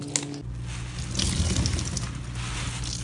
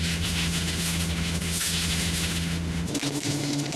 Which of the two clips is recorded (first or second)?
first